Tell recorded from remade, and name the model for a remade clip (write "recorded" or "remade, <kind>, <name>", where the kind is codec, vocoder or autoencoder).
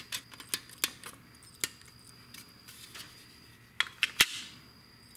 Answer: recorded